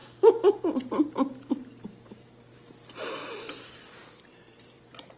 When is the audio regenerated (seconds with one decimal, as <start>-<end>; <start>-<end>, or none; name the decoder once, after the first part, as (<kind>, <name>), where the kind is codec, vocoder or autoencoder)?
0.0-3.2 (vocoder, BigVGAN v2); 3.7-5.2

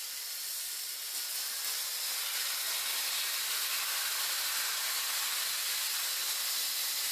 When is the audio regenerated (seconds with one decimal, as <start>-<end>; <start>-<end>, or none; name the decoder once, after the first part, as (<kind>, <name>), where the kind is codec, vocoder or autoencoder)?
none

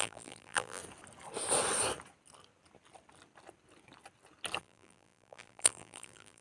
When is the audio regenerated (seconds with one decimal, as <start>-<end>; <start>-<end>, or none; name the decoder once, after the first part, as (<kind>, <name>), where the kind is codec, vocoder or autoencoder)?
0.0-0.8 (vocoder, BigVGAN v2); 4.6-6.4